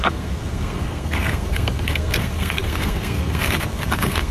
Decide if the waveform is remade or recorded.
remade